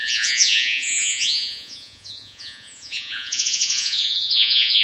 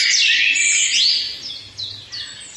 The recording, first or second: second